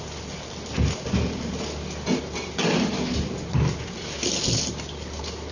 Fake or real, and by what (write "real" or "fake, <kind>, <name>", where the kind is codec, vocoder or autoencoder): real